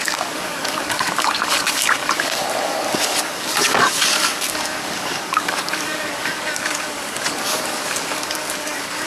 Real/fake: fake